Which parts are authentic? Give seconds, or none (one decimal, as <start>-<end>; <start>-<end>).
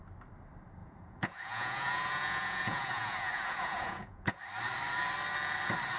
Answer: 0.0-0.8; 4.4-6.0